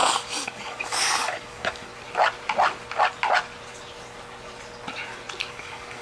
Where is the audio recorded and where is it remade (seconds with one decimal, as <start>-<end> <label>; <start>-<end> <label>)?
0.0-1.9 remade; 1.9-5.5 recorded; 5.5-6.0 remade